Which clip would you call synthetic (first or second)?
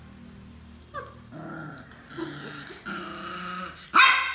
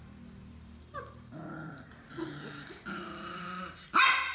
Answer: second